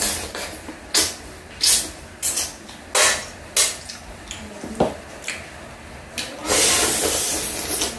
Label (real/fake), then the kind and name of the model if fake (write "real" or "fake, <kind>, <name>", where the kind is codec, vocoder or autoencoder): real